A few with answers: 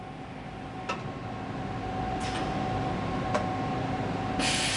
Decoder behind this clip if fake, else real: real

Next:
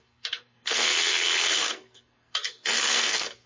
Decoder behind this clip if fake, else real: fake, codec, SNAC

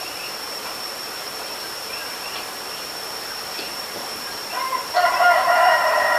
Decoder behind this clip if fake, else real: fake, vocoder, BigVGAN v2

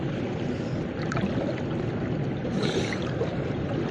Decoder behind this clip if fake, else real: real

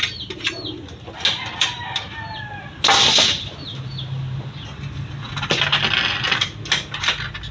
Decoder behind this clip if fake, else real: real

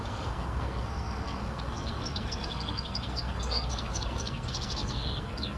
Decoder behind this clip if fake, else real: fake, codec, SNAC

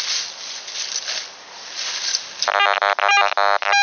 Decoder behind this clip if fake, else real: real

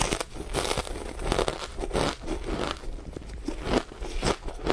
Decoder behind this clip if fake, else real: real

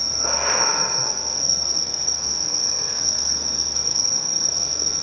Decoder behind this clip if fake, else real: fake, codec, SNAC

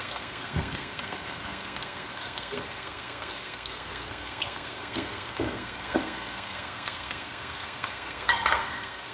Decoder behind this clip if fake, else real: fake, codec, SNAC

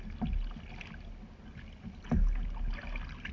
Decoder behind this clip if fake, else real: real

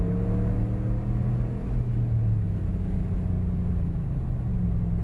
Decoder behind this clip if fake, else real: real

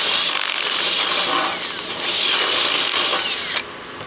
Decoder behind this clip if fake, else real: real